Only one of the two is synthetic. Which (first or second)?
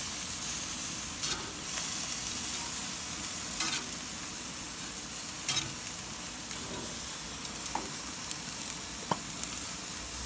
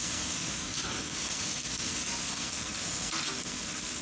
second